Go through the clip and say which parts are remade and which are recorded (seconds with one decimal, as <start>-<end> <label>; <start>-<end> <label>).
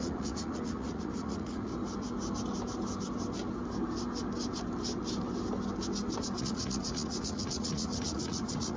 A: 0.0-1.7 remade; 1.7-6.4 recorded; 6.4-8.8 remade